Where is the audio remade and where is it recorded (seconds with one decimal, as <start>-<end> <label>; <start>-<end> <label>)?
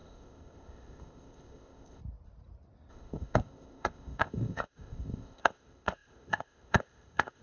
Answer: 0.0-2.0 remade; 2.0-2.9 recorded; 2.9-7.4 remade